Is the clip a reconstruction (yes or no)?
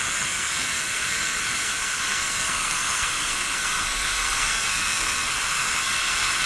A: yes